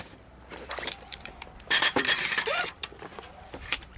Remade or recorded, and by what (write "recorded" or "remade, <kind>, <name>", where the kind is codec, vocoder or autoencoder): remade, vocoder, BigVGAN v2